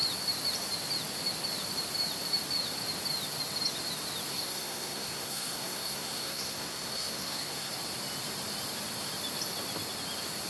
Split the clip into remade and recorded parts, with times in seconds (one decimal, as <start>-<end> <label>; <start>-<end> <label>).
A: 0.0-4.3 recorded; 4.3-7.7 remade; 7.7-10.5 recorded